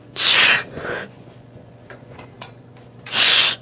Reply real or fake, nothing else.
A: fake